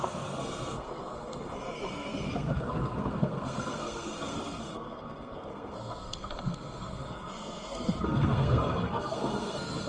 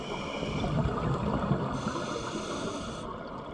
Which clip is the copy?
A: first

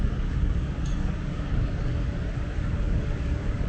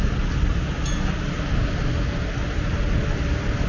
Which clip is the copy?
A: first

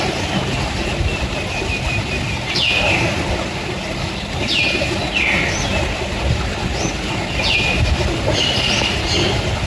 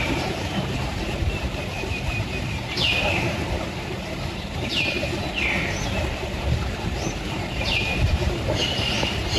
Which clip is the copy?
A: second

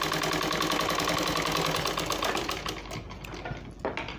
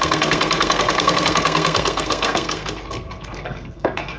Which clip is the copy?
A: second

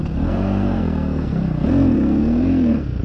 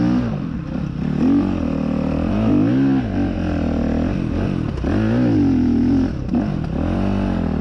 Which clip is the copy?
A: first